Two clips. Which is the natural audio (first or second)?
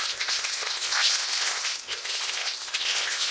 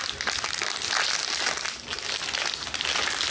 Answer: second